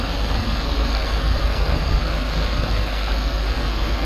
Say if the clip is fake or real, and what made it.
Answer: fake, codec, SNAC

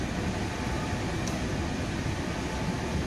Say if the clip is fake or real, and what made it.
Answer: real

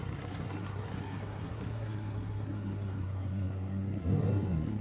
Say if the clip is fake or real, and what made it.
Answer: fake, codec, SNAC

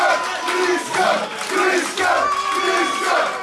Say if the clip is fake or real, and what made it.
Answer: real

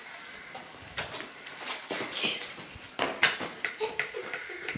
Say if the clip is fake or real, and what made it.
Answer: real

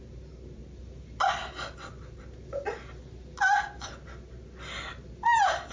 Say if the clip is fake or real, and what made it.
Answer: real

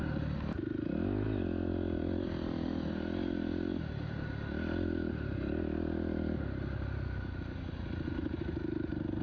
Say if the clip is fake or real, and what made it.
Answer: real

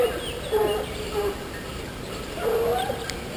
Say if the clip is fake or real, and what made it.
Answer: real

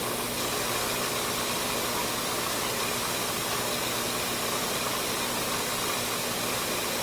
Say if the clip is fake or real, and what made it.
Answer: real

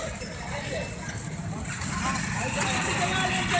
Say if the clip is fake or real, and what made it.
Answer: real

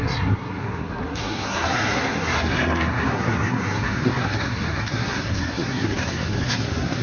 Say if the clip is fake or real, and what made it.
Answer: fake, codec, SNAC